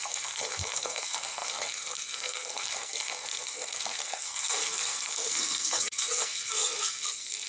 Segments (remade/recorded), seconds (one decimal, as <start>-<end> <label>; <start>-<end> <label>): 0.0-7.5 remade